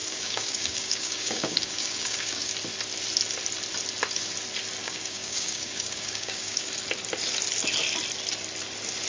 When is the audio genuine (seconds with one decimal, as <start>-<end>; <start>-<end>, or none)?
2.5-4.8; 6.7-9.1